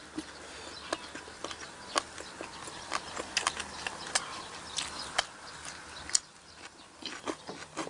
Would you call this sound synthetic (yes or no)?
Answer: no